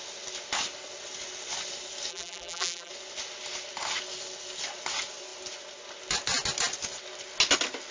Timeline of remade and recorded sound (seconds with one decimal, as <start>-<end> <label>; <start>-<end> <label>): 0.0-2.1 recorded; 2.1-2.9 remade; 2.9-7.9 recorded